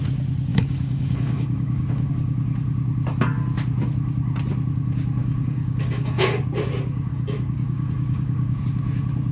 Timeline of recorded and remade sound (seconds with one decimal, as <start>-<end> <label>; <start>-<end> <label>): 0.0-0.5 recorded; 0.5-2.1 remade; 2.1-5.2 recorded; 5.2-6.4 remade; 6.4-7.1 recorded; 7.1-8.6 remade; 8.6-9.3 recorded

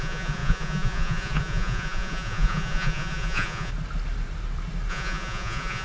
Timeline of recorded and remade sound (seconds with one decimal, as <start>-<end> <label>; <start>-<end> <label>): 0.0-3.7 remade; 3.7-4.9 recorded; 4.9-5.8 remade

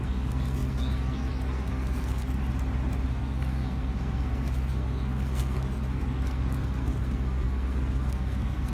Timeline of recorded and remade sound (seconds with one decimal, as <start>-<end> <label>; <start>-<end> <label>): 0.0-2.4 remade; 2.4-3.1 recorded; 3.1-8.7 remade

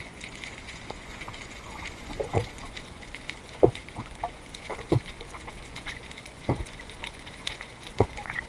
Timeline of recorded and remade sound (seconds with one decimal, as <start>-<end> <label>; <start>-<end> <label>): 0.0-8.5 remade

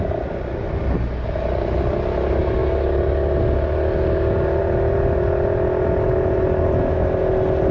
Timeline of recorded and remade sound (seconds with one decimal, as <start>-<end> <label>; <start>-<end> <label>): 0.0-7.7 recorded

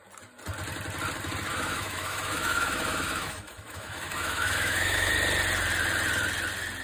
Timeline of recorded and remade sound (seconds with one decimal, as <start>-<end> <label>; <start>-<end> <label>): 0.0-1.5 recorded; 1.5-5.1 remade; 5.1-6.8 recorded